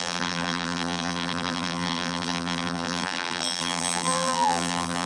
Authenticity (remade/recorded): remade